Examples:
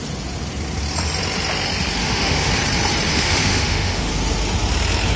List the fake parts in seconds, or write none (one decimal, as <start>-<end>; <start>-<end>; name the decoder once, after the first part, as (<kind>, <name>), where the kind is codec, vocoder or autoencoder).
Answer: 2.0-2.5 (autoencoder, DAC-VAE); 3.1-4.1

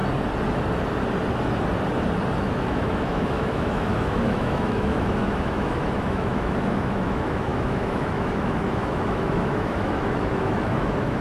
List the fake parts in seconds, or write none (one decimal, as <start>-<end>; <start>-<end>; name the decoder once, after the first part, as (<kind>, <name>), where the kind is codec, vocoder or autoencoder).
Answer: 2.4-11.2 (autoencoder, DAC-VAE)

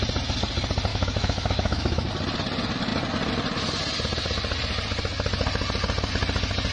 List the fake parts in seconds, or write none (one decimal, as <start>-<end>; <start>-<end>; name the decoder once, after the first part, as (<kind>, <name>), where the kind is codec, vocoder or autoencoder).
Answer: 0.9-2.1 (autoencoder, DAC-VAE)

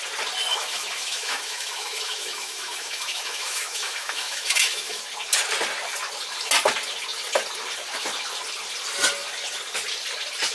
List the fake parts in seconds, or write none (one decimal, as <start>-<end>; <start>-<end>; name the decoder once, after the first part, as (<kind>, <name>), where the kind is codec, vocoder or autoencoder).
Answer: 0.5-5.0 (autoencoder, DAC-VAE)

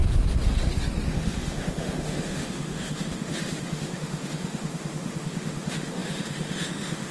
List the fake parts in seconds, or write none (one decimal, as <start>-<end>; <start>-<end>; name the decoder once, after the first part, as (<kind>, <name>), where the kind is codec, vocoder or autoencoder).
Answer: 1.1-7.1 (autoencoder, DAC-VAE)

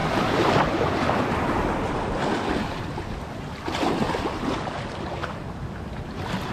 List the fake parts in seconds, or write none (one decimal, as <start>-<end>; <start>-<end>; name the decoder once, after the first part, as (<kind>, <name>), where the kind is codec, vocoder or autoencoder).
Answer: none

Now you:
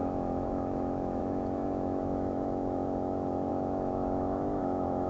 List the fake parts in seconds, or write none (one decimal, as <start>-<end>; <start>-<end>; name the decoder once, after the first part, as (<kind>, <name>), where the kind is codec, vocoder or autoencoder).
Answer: 0.0-5.1 (autoencoder, DAC-VAE)

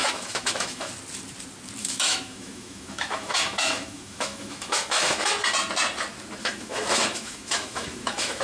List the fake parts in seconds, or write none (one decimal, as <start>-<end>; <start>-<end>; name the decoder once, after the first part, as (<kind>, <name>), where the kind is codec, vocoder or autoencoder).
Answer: 0.0-0.9 (autoencoder, DAC-VAE); 1.8-5.3; 6.4-8.4